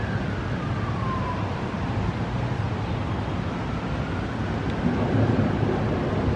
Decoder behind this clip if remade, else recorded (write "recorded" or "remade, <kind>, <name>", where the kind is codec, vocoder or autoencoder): recorded